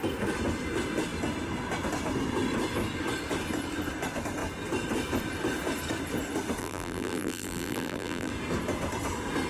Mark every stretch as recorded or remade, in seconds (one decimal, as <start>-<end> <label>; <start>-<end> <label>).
0.0-6.6 recorded; 6.6-8.3 remade; 8.3-9.5 recorded